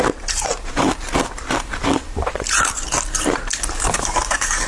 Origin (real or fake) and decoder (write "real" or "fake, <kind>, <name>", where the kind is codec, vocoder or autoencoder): fake, vocoder, BigVGAN v2